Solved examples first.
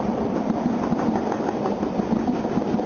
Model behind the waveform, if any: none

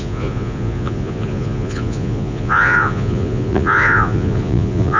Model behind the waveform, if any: vocoder, Vocos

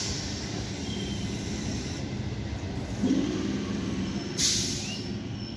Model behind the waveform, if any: none